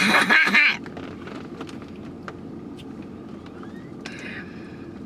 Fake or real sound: real